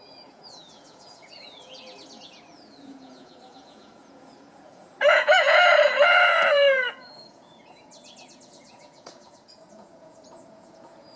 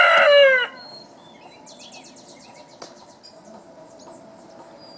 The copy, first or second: first